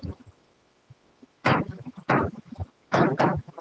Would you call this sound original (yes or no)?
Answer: no